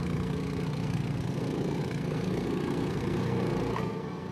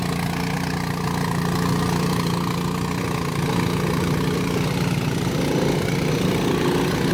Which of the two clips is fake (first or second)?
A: first